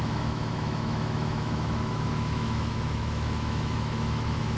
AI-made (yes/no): yes